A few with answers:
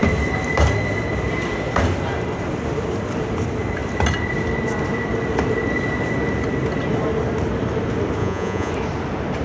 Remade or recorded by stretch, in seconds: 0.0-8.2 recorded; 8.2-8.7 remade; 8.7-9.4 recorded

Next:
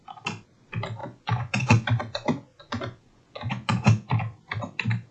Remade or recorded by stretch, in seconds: 0.0-1.0 recorded; 1.0-4.1 remade; 4.1-5.1 recorded

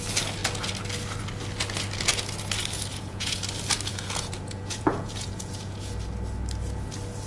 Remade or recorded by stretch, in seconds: 0.0-2.9 recorded; 2.9-3.4 remade; 3.4-3.9 recorded; 3.9-5.9 remade; 5.9-7.3 recorded

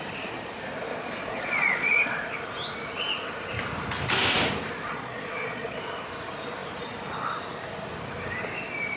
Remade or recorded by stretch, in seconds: 0.0-0.9 recorded; 0.9-2.2 remade; 2.2-4.9 recorded; 4.9-5.8 remade; 5.8-9.0 recorded